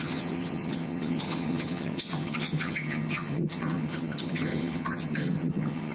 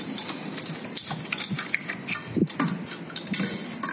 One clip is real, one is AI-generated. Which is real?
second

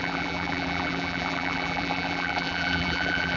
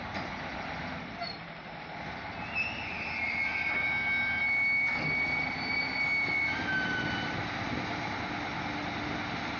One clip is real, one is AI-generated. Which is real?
second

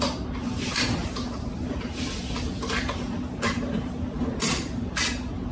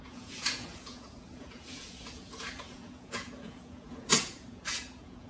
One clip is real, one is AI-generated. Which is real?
first